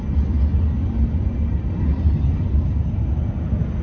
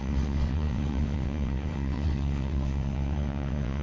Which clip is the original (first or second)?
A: first